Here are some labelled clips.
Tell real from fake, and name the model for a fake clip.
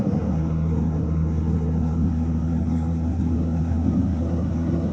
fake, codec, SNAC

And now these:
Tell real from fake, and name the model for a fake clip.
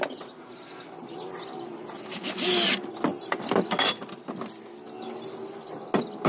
real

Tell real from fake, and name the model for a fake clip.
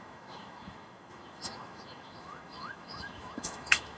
fake, autoencoder, DAC-VAE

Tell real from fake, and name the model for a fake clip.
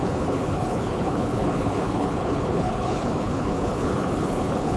fake, codec, HILCodec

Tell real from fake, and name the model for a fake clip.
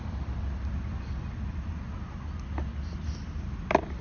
real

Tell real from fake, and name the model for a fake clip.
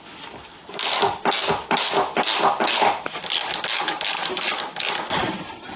real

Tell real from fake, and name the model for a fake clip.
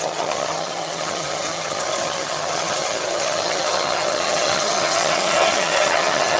fake, vocoder, HiFi-GAN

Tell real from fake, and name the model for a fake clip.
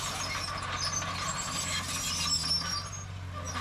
real